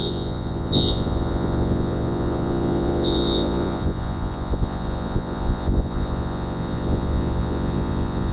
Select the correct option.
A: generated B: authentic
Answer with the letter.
A